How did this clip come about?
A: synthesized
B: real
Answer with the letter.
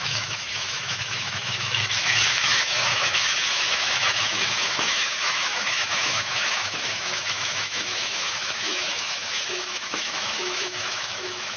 A